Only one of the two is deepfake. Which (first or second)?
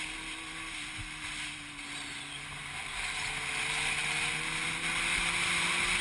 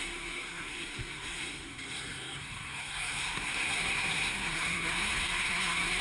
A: second